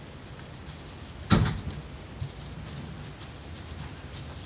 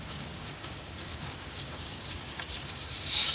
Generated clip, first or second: second